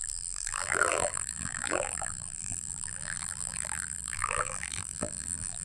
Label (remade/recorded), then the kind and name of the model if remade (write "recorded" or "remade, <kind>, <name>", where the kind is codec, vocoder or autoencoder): remade, vocoder, BigVGAN v2